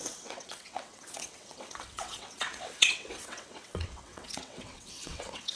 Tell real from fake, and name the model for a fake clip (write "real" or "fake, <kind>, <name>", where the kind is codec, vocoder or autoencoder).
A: fake, vocoder, WaveNeXt